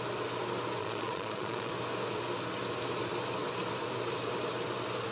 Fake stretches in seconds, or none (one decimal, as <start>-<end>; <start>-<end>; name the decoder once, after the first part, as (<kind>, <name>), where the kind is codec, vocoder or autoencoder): 0.8-1.7 (vocoder, Vocos)